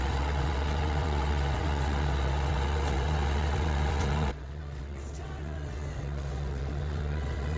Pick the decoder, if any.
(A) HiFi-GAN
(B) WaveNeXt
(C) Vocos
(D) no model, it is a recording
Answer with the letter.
B